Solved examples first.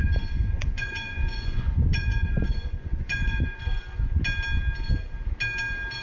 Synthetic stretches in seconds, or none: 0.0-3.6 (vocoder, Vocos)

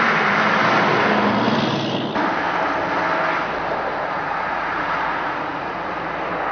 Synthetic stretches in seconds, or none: 3.9-5.8 (vocoder, Vocos)

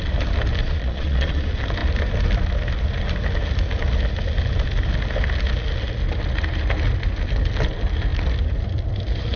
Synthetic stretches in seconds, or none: 0.6-1.4 (vocoder, Vocos)